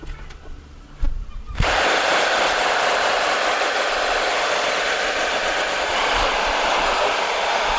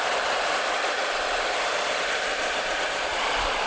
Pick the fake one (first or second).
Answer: second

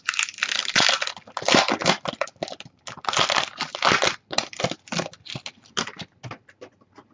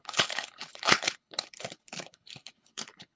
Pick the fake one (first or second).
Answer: second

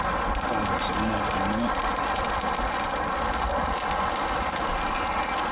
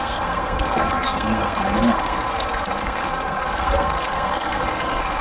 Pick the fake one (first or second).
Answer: second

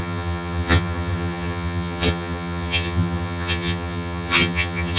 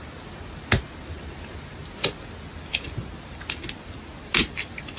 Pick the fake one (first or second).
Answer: first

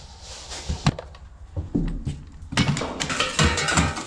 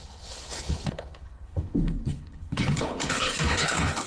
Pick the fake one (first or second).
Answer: second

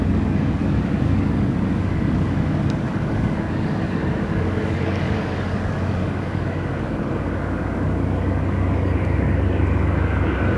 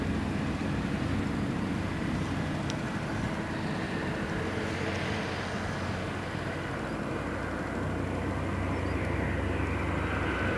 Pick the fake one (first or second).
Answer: first